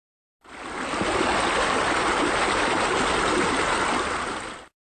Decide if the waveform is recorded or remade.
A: recorded